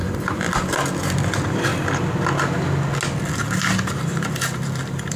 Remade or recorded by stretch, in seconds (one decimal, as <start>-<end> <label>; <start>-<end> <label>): 0.0-1.7 remade; 1.7-4.0 recorded; 4.0-5.2 remade